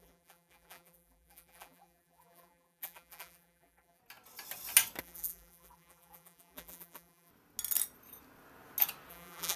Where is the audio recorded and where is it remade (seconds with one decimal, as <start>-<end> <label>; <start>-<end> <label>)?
0.0-4.0 remade; 4.0-5.0 recorded; 5.0-7.3 remade; 7.3-9.1 recorded; 9.1-9.6 remade